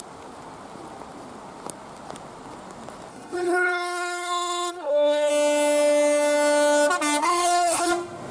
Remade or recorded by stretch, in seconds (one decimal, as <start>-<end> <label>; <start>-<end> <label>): 0.0-3.1 recorded; 3.1-5.3 remade; 5.3-7.2 recorded; 7.2-7.9 remade; 7.9-8.3 recorded